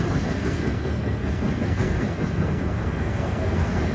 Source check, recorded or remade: remade